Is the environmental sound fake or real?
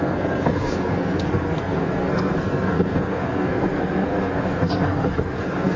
fake